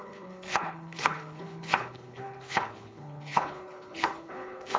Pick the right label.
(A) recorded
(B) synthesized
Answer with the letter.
B